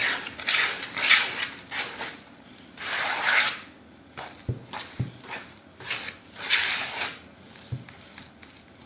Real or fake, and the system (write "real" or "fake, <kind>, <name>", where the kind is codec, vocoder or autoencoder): real